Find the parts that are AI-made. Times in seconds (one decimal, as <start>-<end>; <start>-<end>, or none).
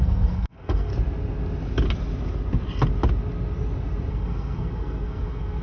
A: 0.0-0.9; 4.1-5.6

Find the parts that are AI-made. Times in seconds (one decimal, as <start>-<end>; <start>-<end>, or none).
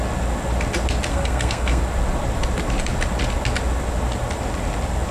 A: 1.1-1.8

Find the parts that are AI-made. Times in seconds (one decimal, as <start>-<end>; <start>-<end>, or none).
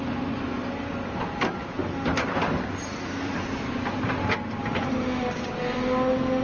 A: none